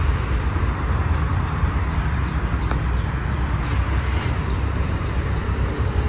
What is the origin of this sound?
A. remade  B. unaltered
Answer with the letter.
A